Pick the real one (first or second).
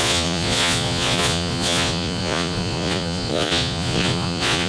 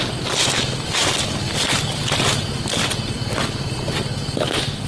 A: second